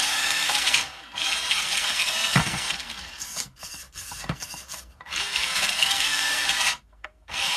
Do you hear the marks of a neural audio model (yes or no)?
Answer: yes